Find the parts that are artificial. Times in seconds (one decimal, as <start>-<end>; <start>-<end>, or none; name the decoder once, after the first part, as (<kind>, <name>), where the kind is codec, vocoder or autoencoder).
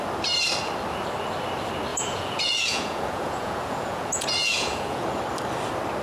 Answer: 1.9-5.2 (vocoder, Vocos)